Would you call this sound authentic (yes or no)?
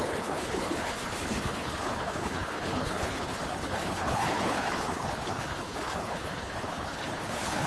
no